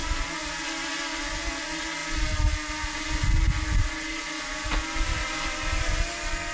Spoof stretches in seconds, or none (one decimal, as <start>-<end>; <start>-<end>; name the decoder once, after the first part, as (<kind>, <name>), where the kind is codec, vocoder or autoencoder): none